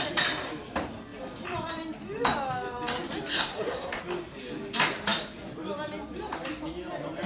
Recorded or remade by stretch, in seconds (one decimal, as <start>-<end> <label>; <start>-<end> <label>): 0.0-3.3 recorded; 3.3-4.0 remade; 4.0-7.3 recorded